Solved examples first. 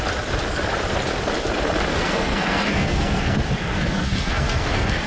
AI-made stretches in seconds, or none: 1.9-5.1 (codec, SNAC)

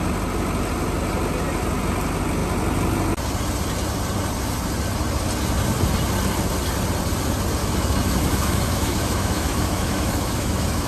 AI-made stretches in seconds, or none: 7.6-10.9 (autoencoder, DAC-VAE)